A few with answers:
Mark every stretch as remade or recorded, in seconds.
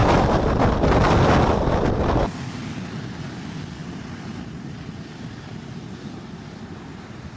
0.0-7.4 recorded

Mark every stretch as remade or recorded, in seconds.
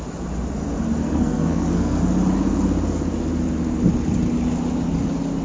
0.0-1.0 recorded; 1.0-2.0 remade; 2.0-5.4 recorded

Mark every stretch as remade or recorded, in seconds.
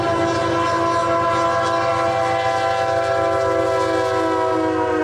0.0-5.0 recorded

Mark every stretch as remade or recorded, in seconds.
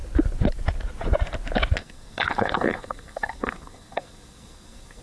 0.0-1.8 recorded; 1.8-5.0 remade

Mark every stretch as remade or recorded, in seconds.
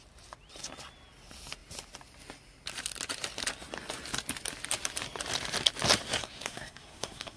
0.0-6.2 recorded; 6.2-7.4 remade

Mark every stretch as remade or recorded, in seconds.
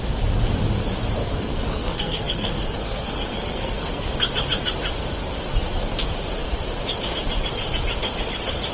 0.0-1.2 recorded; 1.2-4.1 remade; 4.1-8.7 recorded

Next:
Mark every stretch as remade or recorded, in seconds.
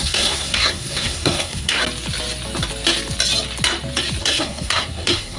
0.0-1.8 remade; 1.8-4.2 recorded; 4.2-5.4 remade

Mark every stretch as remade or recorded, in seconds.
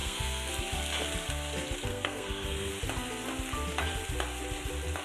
0.0-0.5 remade; 0.5-1.9 recorded; 1.9-2.7 remade; 2.7-5.0 recorded